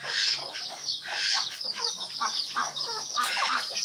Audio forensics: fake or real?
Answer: fake